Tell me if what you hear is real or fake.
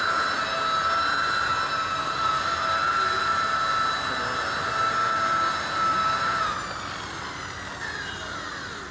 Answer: real